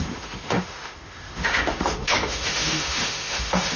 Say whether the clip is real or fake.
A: fake